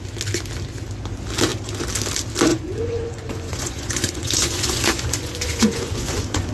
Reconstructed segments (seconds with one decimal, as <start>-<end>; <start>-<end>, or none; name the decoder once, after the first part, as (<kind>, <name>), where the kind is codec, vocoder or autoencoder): 2.5-6.5 (vocoder, Vocos)